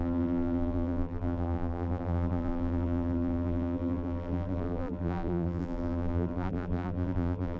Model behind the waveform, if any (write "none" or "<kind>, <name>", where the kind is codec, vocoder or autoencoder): vocoder, BigVGAN v2